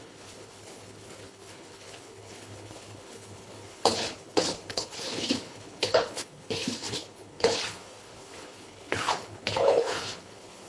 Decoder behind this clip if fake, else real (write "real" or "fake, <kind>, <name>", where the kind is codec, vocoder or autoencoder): fake, codec, HILCodec